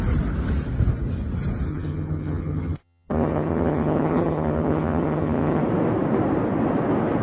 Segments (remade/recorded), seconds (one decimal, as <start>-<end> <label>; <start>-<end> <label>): 0.0-1.7 recorded; 1.7-5.6 remade; 5.6-7.2 recorded